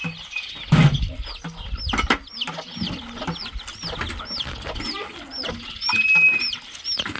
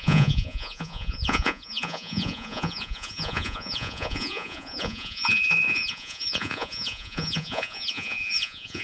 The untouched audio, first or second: first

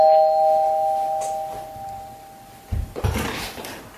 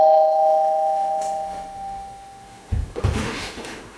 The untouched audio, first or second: first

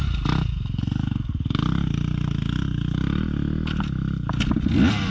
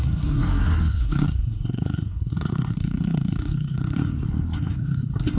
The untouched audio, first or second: first